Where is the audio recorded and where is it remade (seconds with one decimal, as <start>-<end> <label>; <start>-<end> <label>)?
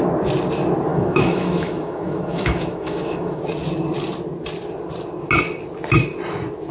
0.0-0.9 recorded; 0.9-3.4 remade; 3.4-6.7 recorded